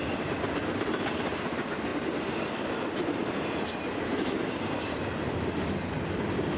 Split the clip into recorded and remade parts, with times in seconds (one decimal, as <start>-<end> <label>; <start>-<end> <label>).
0.0-6.6 recorded